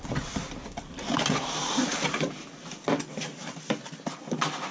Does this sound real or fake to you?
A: real